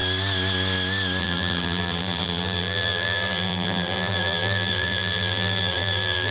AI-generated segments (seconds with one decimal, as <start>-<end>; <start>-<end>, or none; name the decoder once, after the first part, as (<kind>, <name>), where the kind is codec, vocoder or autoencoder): 1.2-6.3 (vocoder, BigVGAN v2)